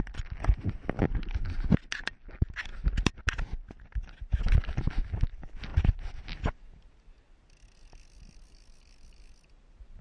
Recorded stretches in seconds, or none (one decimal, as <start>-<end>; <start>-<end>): 0.0-5.7; 6.2-10.0